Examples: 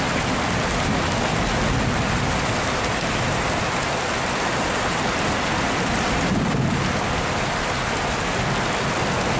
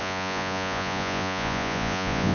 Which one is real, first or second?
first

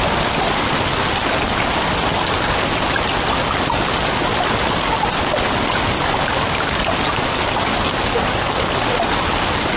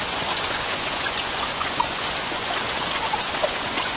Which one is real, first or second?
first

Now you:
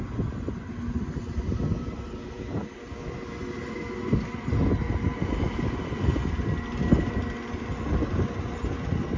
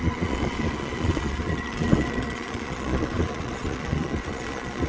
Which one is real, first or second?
first